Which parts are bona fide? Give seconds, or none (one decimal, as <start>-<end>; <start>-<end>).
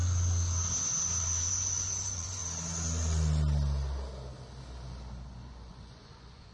0.0-1.5; 2.4-5.3